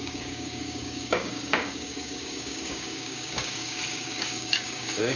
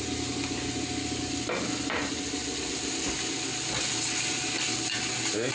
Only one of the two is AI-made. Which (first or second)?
first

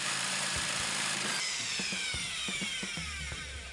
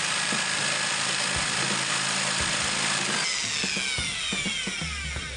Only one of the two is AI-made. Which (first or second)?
first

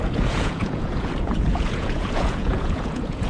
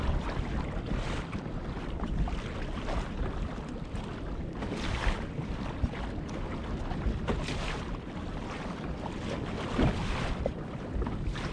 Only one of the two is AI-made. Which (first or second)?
first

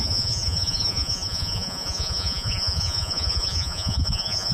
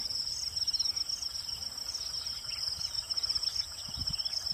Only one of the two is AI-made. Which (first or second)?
first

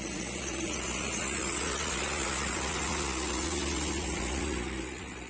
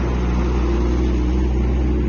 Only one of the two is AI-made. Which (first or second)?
first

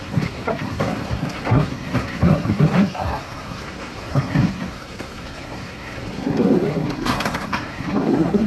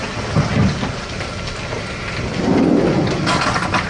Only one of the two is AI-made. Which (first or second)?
first